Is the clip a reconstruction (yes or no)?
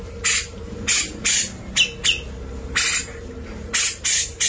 no